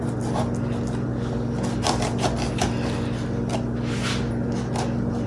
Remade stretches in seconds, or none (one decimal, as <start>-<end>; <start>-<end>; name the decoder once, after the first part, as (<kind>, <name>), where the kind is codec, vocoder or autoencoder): none